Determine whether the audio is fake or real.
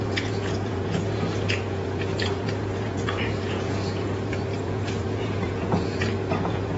fake